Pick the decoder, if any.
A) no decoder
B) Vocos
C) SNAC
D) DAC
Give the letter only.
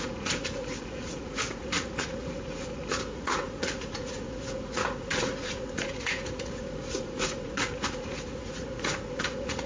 B